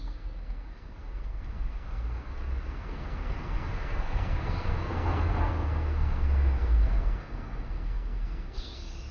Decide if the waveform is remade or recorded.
remade